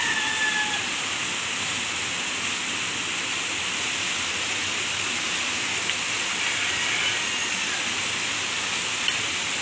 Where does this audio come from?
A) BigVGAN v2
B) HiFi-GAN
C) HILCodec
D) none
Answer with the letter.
D